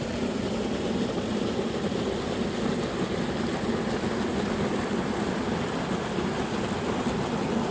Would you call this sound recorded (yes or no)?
yes